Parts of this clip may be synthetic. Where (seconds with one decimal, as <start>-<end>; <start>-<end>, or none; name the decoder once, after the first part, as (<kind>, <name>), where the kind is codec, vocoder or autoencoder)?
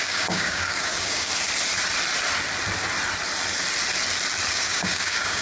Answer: 0.0-1.3 (codec, DAC); 4.5-5.4